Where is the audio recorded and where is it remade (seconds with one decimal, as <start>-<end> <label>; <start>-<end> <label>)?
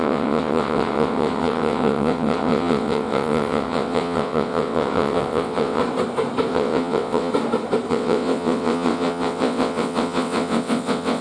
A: 0.0-5.8 remade; 5.8-6.5 recorded; 6.5-7.3 remade; 7.3-7.9 recorded; 7.9-11.2 remade